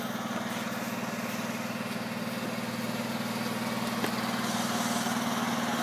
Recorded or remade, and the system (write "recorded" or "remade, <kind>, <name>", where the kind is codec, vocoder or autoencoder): recorded